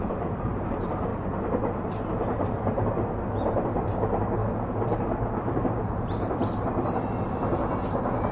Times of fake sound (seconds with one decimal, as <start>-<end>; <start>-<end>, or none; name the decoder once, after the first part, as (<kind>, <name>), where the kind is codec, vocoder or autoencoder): 0.0-1.1 (vocoder, BigVGAN v2); 2.0-4.4; 5.6-6.4; 7.9-8.3